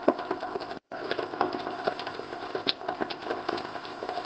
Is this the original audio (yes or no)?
no